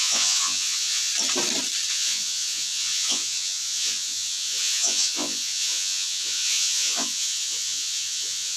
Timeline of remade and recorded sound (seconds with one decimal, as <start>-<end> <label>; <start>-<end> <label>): 0.0-1.1 remade; 1.1-1.9 recorded; 1.9-8.6 remade